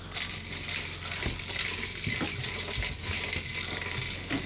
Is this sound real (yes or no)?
yes